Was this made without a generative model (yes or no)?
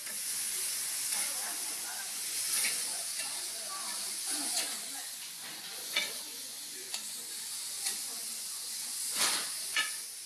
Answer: no